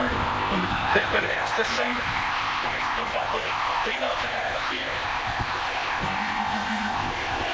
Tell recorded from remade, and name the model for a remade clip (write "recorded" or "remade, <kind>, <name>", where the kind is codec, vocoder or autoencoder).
remade, codec, ZipCodec